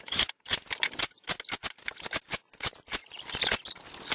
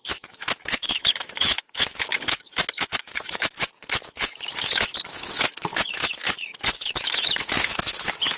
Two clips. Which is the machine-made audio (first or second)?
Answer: second